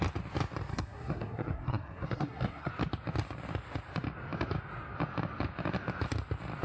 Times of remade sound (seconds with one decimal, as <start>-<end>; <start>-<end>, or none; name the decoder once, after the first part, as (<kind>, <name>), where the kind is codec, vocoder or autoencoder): 0.7-2.7 (codec, SNAC)